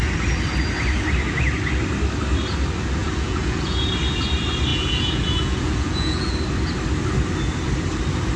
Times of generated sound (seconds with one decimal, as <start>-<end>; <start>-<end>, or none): 3.0-3.9; 4.7-6.3